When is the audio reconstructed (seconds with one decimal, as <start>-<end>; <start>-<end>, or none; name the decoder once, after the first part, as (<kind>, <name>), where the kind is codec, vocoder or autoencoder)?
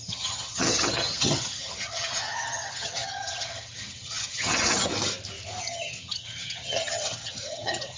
0.0-4.9 (vocoder, HiFi-GAN); 5.6-8.0